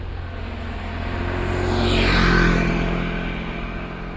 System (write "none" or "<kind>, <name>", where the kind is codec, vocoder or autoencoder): none